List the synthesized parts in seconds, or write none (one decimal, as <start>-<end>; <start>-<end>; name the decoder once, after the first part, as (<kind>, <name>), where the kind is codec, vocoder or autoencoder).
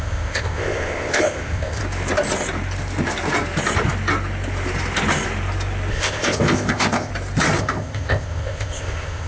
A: 0.0-1.8 (codec, ZipCodec); 5.9-7.1; 7.6-9.3